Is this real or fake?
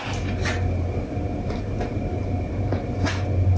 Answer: real